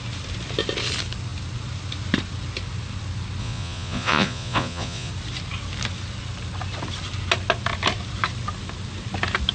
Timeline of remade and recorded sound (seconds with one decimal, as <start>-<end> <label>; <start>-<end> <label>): 0.0-3.4 recorded; 3.4-5.1 remade; 5.1-9.5 recorded